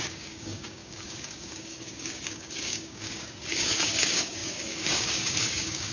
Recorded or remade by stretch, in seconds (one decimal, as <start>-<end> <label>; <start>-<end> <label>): 0.0-5.9 remade